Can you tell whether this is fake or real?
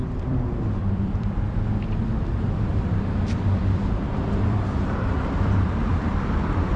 fake